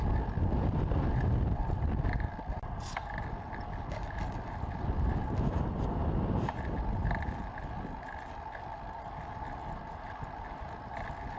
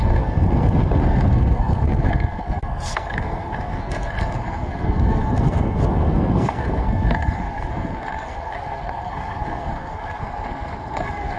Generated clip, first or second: second